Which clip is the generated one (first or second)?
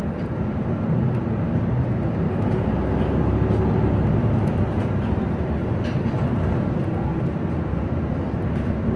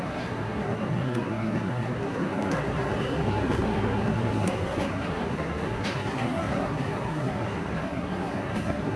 second